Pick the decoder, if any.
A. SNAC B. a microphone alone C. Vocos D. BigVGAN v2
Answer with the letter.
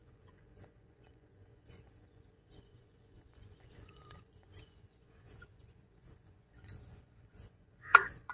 C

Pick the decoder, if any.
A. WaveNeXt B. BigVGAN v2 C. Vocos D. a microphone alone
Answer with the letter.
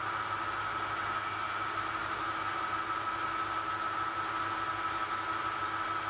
D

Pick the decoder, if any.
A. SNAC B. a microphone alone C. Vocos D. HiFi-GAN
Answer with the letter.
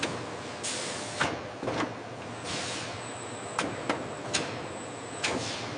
B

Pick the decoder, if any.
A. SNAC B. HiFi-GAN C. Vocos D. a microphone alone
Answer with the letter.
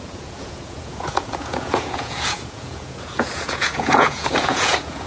C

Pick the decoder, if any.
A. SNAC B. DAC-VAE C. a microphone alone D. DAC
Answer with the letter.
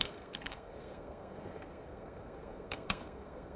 A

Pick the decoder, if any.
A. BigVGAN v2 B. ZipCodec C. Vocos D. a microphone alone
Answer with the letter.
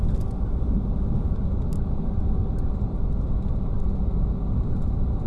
D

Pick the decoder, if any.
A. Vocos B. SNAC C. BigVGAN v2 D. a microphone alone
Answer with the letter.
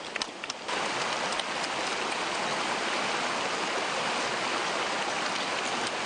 D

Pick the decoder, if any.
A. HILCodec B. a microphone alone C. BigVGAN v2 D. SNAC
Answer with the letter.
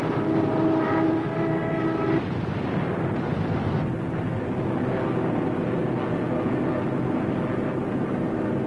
B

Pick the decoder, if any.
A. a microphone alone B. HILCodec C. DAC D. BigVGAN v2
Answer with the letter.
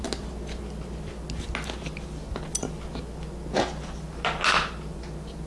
A